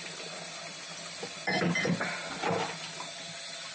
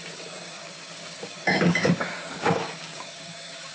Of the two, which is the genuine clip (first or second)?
first